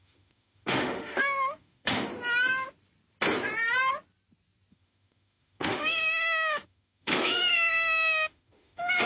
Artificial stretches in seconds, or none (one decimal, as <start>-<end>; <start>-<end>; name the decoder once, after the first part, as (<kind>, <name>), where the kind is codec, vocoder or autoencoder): 0.0-2.1 (autoencoder, DAC-VAE); 4.7-9.1